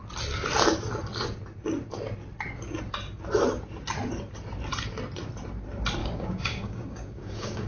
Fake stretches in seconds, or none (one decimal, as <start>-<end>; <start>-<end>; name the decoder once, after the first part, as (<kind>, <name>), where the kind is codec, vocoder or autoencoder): 6.0-7.7 (codec, DAC)